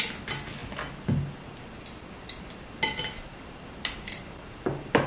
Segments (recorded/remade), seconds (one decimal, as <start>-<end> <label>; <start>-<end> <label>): 0.0-5.1 recorded